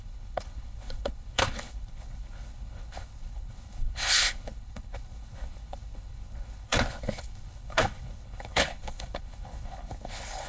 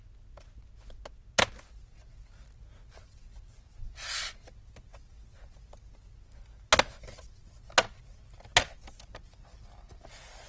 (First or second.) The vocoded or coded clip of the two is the first